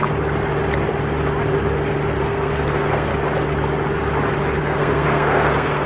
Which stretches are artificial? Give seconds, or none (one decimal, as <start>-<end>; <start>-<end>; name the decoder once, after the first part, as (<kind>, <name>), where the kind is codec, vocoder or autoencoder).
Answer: 2.2-3.1 (codec, SNAC); 4.6-5.9